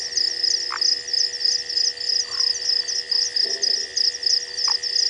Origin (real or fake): real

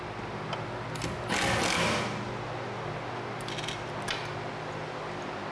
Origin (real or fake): real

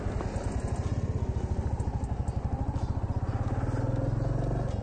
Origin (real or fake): real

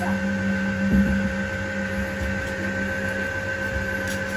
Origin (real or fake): real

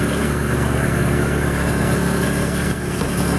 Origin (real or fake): fake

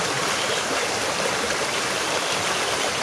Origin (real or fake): real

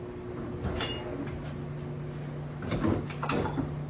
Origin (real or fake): real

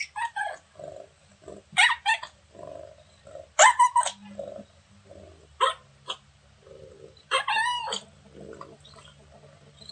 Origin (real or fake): real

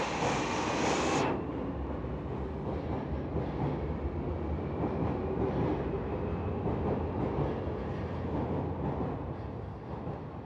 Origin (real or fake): real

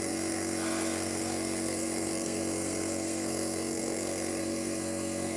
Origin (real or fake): fake